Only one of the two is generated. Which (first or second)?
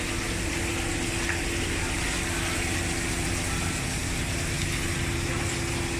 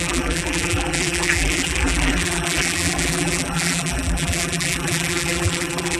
second